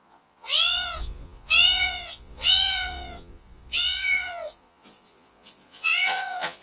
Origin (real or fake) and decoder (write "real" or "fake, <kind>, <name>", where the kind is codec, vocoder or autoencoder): fake, vocoder, Vocos